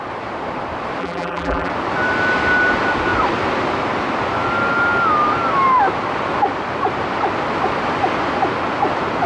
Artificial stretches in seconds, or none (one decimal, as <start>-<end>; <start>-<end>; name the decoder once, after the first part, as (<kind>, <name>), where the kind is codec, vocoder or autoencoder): 1.0-1.7 (vocoder, BigVGAN v2)